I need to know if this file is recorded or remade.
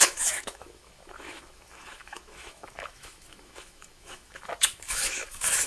remade